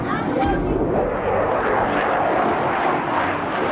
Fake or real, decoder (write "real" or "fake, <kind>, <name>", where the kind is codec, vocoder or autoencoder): real